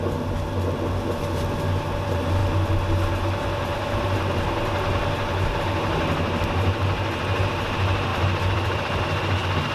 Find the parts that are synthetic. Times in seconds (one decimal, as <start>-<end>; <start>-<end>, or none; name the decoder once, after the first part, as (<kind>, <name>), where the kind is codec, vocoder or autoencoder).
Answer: 8.1-9.0 (vocoder, BigVGAN v2)